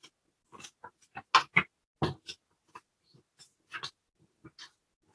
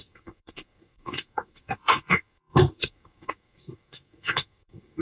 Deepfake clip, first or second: second